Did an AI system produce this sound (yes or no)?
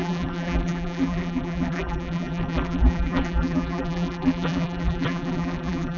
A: yes